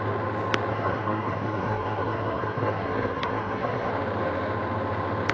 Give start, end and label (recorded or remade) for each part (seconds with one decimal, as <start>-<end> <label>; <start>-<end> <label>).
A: 0.0-0.7 recorded; 0.7-3.9 remade; 3.9-5.3 recorded